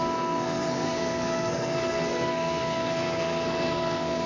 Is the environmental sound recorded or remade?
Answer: remade